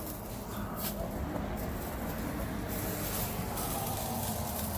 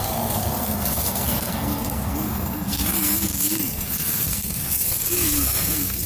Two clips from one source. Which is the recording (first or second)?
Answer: first